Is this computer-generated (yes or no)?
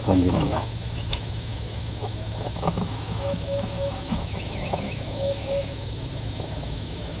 yes